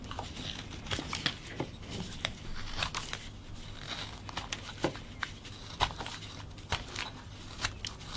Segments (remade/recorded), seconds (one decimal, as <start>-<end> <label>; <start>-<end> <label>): 0.0-8.2 recorded